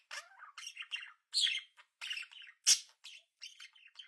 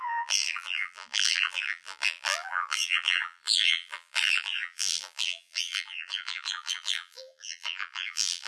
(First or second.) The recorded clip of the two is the first